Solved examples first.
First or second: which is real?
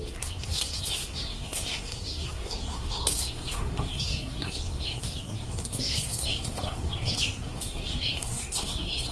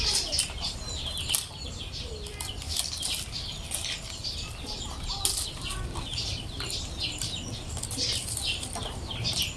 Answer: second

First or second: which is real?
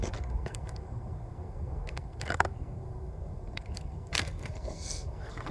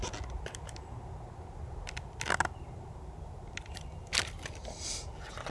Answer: second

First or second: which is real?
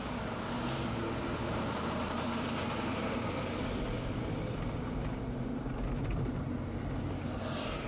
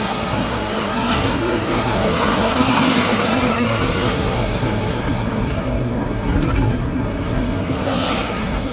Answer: first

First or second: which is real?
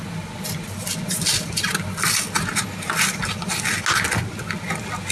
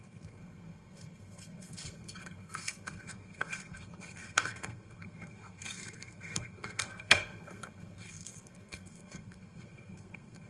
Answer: first